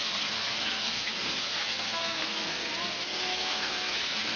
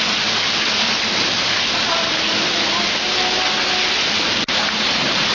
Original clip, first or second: second